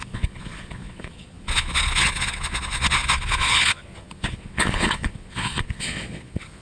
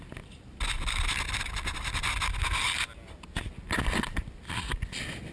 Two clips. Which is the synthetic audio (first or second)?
first